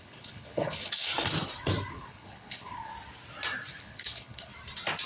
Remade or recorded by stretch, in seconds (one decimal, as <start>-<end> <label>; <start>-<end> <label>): 0.0-1.1 remade; 1.1-1.9 recorded; 1.9-2.9 remade; 2.9-3.8 recorded; 3.8-4.5 remade; 4.5-5.1 recorded